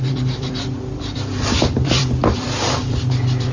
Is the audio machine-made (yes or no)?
yes